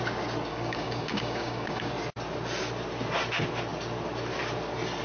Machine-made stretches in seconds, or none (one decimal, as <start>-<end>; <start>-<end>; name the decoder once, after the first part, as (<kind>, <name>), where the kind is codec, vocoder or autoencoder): 0.5-1.9 (codec, DAC)